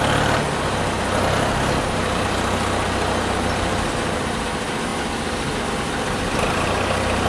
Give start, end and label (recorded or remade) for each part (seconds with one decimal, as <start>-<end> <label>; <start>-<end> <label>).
0.0-7.3 recorded